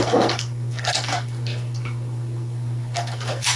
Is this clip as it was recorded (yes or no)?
no